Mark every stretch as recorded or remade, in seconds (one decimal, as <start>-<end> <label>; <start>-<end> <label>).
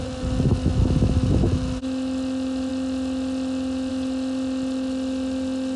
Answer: 0.0-5.8 recorded